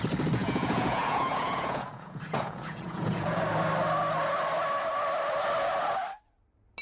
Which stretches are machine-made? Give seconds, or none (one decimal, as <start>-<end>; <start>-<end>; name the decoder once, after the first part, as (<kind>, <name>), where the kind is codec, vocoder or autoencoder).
0.4-3.4 (vocoder, Vocos)